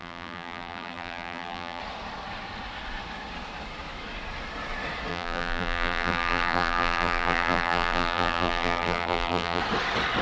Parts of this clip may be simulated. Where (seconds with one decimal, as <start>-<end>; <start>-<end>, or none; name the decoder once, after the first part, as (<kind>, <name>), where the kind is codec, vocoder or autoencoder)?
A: 0.0-1.8 (vocoder, BigVGAN v2); 5.1-9.6